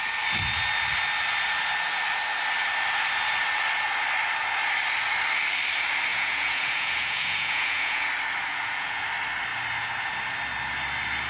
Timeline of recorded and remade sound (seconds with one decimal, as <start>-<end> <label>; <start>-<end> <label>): 0.0-6.1 recorded; 6.1-8.1 remade; 8.1-8.5 recorded; 8.5-9.0 remade; 9.0-11.3 recorded